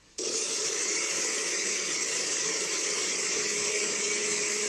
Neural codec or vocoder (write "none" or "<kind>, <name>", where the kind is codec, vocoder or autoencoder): codec, DAC